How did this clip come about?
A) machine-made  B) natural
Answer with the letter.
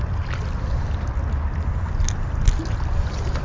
B